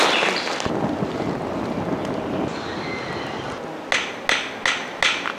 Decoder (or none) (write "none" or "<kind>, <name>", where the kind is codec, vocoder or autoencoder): none